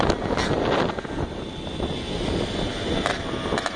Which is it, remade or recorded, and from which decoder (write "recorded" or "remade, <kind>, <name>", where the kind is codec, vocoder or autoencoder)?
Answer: recorded